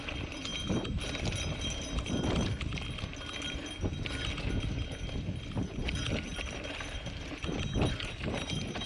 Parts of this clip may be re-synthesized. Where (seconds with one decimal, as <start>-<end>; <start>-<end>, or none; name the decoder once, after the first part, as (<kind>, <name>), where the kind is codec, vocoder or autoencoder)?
6.3-8.0 (vocoder, BigVGAN v2)